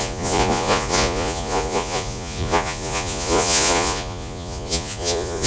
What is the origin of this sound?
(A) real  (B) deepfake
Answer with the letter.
B